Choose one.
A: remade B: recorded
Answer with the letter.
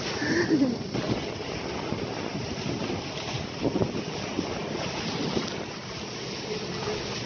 B